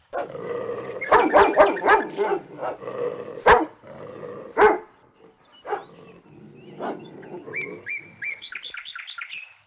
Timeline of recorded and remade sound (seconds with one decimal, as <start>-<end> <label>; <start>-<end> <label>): 0.0-9.7 recorded